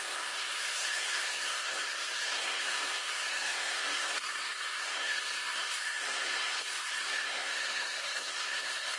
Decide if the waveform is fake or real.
fake